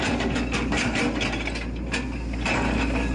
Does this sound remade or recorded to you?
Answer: recorded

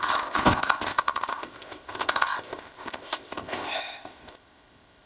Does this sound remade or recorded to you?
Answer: remade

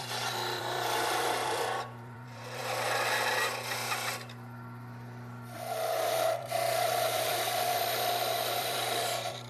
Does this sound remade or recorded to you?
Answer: remade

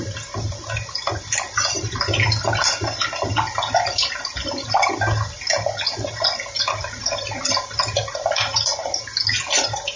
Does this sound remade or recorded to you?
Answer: recorded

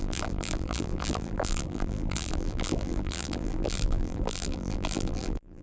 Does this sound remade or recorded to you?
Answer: remade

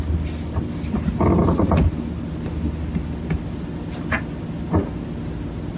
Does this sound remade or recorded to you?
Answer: recorded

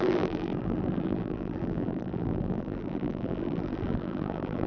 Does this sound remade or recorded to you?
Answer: remade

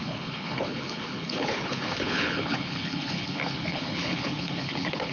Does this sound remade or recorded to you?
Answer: remade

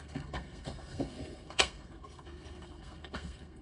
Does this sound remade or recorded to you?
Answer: remade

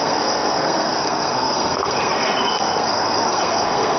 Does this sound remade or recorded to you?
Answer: remade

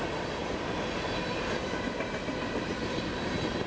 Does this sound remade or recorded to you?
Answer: recorded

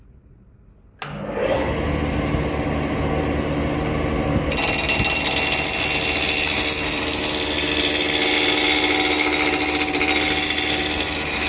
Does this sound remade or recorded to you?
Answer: recorded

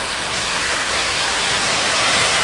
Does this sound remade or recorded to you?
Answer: remade